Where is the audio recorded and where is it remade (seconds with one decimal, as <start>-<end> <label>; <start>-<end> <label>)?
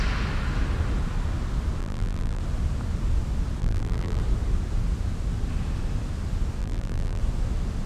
0.0-1.8 recorded; 1.8-2.4 remade; 2.4-3.6 recorded; 3.6-4.2 remade; 4.2-6.6 recorded; 6.6-7.2 remade; 7.2-7.9 recorded